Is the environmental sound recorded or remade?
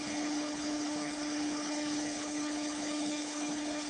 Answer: remade